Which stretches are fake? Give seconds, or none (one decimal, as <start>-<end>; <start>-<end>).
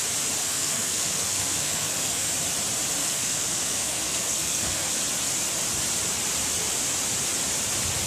0.4-2.3; 3.0-4.9